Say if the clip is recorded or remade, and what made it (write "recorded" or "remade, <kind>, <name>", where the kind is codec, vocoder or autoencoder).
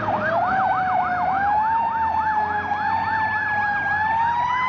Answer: recorded